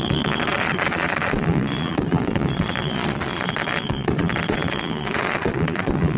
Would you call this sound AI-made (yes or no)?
yes